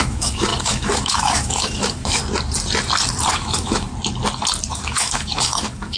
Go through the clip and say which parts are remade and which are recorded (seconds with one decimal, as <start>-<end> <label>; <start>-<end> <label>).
0.0-2.2 remade; 2.2-3.3 recorded; 3.3-3.9 remade; 3.9-4.7 recorded; 4.7-6.0 remade